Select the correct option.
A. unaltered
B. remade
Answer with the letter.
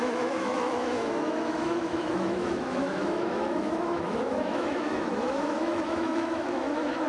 B